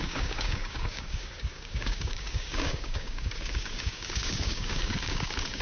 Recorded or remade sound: remade